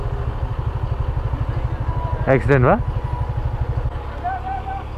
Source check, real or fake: real